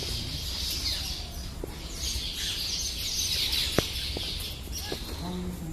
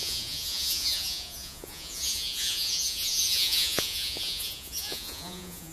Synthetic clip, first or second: second